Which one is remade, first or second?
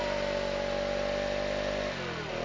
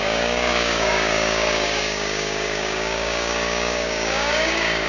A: second